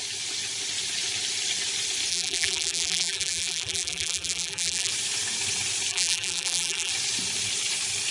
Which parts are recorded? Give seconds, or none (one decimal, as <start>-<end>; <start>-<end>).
0.0-2.1; 4.9-5.9; 6.9-8.1

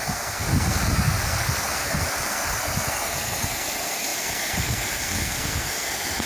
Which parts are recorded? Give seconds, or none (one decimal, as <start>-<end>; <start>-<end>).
none

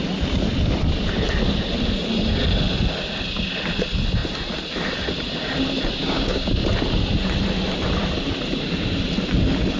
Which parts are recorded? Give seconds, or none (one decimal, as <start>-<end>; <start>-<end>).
0.0-6.0; 6.5-9.8

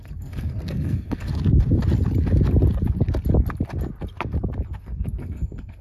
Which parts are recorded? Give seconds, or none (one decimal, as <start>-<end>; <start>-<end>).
1.3-4.8